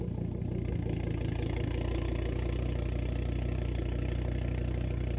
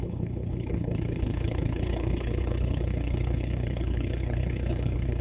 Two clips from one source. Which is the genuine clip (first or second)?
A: first